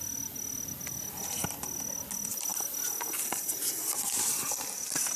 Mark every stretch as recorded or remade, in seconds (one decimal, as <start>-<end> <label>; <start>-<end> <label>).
0.0-5.2 recorded